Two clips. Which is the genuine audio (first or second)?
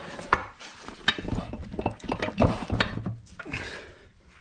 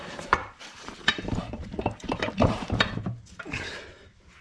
first